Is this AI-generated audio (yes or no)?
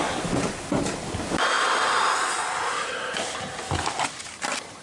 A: no